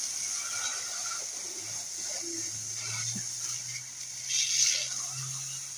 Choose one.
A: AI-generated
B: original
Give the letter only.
B